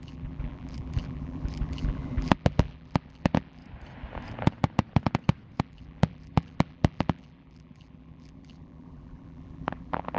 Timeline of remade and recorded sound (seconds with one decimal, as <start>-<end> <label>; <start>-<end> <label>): 0.0-3.6 remade; 3.6-5.6 recorded; 5.6-10.2 remade